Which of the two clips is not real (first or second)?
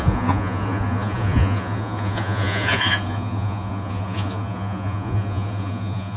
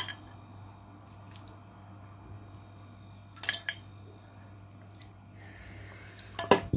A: first